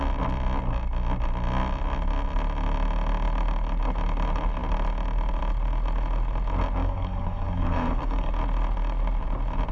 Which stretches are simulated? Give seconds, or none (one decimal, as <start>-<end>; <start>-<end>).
6.8-8.3

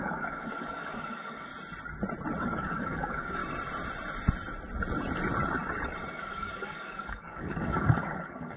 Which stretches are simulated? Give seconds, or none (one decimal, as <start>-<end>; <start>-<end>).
0.0-1.5; 2.4-3.4; 6.1-8.6

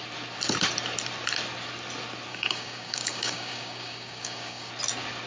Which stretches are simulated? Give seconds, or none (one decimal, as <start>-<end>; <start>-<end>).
2.3-4.7

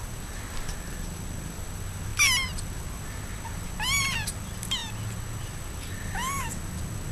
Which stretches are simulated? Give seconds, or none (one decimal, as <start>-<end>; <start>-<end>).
none

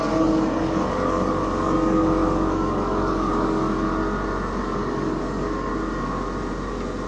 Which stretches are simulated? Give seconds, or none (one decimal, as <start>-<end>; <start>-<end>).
0.0-3.9; 4.6-5.7